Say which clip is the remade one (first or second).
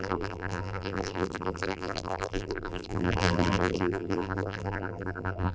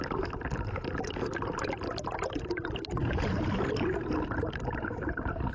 first